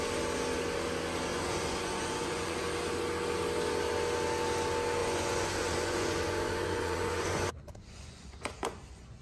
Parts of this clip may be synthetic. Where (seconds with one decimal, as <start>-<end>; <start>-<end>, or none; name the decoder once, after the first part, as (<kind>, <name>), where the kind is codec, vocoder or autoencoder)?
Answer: 1.3-2.6 (vocoder, Vocos); 5.0-9.2